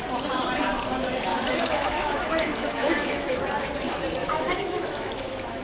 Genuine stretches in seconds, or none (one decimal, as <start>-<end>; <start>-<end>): 0.0-1.3; 3.4-4.2